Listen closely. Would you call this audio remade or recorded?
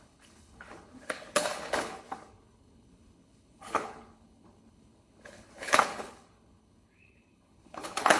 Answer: remade